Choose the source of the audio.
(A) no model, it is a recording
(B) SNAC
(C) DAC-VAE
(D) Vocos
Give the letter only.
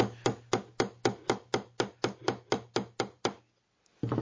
A